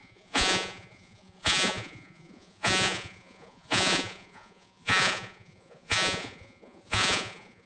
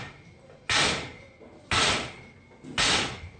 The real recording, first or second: second